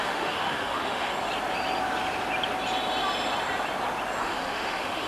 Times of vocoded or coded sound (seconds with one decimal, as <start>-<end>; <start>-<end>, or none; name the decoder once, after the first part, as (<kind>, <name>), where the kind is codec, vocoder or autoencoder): 0.0-1.1 (autoencoder, DAC-VAE); 4.2-5.1